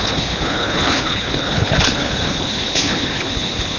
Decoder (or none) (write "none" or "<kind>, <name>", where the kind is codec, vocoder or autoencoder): codec, HILCodec